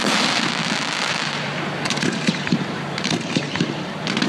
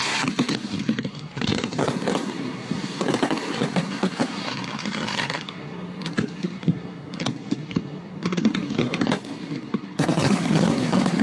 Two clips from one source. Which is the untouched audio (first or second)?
first